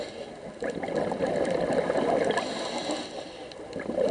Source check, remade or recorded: recorded